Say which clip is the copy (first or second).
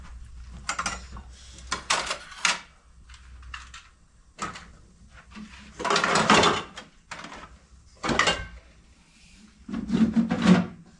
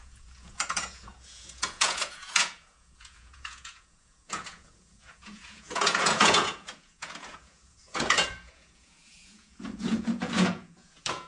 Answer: second